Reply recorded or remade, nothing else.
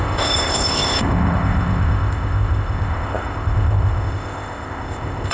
remade